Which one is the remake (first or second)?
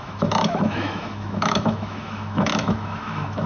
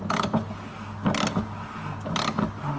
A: first